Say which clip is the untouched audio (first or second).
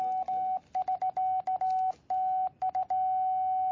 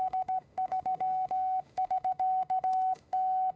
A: first